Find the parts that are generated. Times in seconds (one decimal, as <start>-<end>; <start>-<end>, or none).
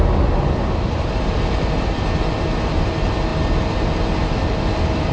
none